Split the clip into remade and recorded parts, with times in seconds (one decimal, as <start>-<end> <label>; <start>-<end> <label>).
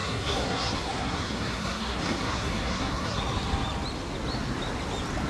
0.0-3.2 remade; 3.2-5.3 recorded